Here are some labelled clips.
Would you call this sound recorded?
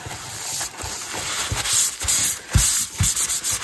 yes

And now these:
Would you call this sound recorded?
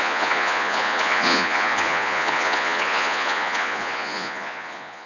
no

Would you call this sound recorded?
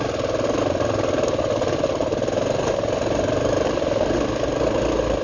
yes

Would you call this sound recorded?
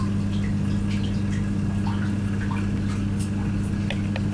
yes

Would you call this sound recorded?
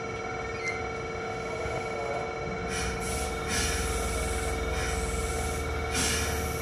yes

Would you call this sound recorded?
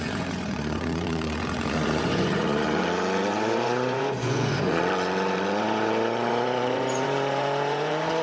no